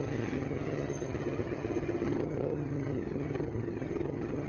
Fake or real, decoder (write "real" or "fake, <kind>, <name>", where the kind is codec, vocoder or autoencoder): fake, vocoder, HiFi-GAN